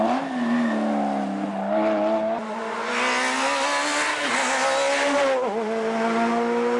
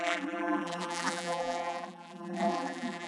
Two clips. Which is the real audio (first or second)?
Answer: first